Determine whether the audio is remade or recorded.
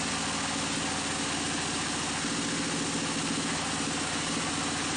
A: recorded